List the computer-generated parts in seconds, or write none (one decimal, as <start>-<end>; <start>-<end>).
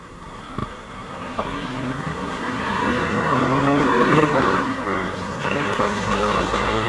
0.0-6.9